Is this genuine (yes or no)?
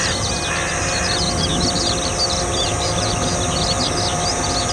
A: yes